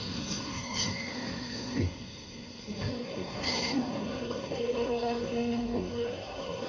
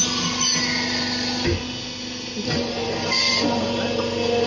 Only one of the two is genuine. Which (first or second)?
second